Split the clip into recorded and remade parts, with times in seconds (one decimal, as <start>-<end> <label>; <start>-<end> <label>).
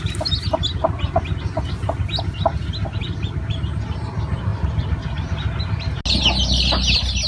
0.0-7.3 recorded